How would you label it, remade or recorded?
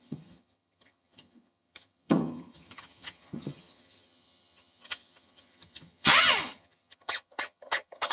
remade